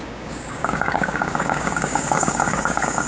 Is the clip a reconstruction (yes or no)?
yes